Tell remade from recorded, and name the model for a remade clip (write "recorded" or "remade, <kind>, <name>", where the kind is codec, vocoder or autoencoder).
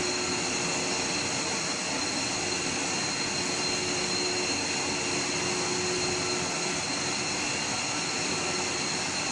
recorded